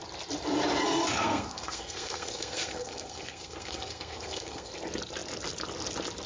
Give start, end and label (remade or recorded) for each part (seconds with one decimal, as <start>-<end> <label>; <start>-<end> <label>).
0.0-1.2 recorded; 1.2-4.7 remade; 4.7-6.3 recorded